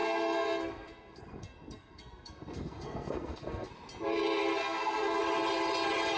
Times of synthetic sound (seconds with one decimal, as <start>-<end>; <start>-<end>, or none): 0.0-3.7; 4.6-5.2